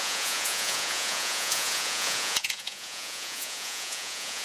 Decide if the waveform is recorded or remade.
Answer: remade